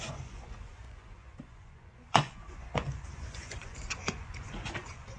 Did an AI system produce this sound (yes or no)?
yes